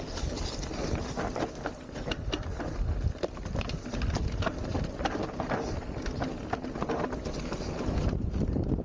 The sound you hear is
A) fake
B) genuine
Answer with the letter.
B